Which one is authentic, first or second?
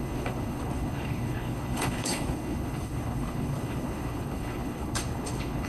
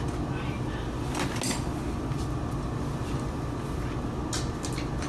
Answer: second